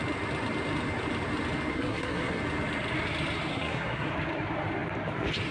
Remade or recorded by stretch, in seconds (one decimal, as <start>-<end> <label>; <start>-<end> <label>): 0.0-1.7 recorded; 1.7-2.4 remade; 2.4-3.5 recorded; 3.5-4.1 remade; 4.1-5.5 recorded